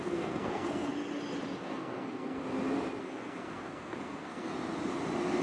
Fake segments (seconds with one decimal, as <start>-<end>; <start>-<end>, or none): 0.0-0.9; 1.6-2.4; 3.0-4.5